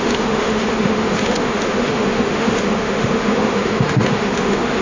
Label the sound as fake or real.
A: fake